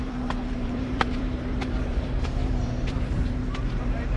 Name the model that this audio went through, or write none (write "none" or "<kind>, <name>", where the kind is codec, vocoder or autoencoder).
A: vocoder, BigVGAN v2